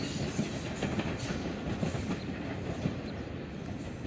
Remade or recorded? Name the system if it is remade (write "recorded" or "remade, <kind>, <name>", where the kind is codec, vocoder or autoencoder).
recorded